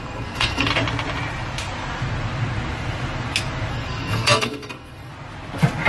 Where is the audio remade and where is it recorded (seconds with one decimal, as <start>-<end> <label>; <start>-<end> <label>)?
0.0-0.7 remade; 0.7-3.7 recorded; 3.7-5.1 remade; 5.1-5.9 recorded